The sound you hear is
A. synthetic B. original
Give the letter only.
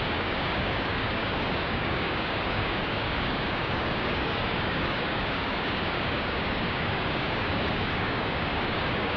A